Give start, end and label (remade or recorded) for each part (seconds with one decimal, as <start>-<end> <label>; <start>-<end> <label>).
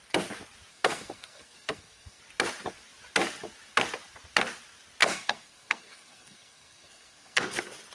0.0-0.7 recorded; 0.7-2.2 remade; 2.2-5.0 recorded; 5.0-7.4 remade; 7.4-7.9 recorded